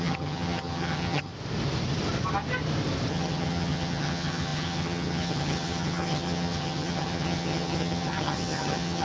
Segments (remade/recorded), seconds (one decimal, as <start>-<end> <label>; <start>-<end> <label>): 0.0-1.3 remade; 1.3-3.1 recorded; 3.1-9.0 remade